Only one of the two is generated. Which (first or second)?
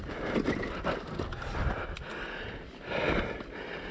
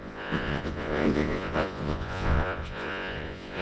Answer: second